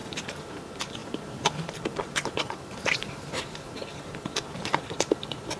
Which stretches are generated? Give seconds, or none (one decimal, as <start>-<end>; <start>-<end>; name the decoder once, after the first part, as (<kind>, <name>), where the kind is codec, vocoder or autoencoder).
0.0-5.6 (vocoder, BigVGAN v2)